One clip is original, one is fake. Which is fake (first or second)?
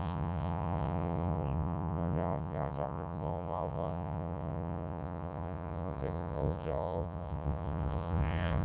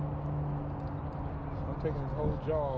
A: first